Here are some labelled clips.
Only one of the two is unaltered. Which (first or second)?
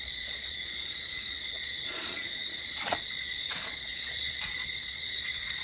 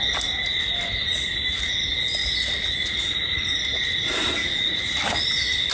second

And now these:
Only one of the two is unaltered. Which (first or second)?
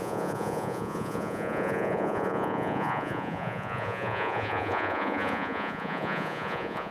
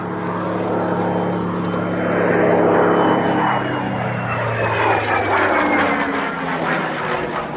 second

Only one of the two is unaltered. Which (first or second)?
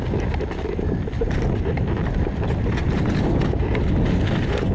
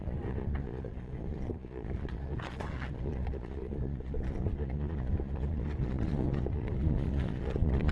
first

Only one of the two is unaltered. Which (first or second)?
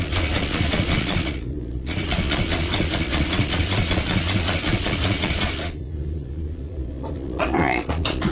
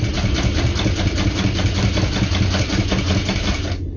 second